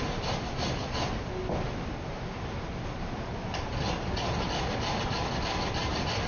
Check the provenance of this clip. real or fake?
real